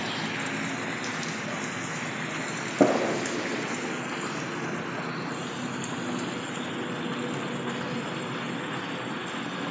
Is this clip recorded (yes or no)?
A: yes